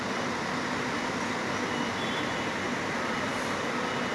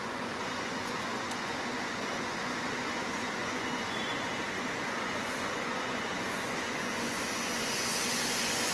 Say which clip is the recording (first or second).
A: first